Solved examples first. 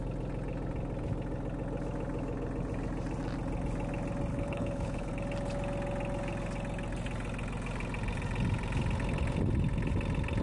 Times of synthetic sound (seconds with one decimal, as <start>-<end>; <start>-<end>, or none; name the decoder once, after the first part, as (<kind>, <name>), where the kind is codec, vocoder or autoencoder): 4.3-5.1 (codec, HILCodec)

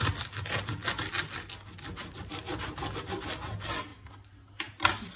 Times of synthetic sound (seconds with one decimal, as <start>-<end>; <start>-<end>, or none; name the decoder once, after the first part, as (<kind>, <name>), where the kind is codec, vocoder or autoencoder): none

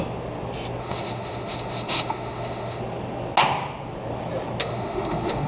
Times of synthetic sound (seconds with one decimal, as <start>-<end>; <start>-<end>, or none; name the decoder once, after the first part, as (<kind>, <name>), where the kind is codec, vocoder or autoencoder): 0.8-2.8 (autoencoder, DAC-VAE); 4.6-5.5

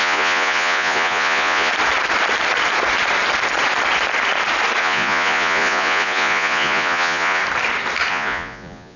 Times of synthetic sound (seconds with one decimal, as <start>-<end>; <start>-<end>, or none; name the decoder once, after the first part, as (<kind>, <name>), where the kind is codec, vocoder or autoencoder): 0.0-1.7 (vocoder, Vocos); 4.8-7.4; 8.1-9.0